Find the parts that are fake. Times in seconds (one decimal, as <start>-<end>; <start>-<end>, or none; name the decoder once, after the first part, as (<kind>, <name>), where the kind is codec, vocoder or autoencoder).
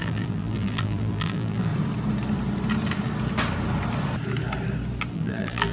0.0-1.7 (vocoder, BigVGAN v2); 5.1-5.7